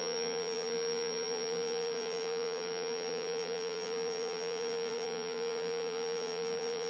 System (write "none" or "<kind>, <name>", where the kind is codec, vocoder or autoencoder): vocoder, BigVGAN v2